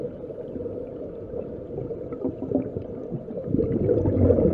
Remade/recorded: recorded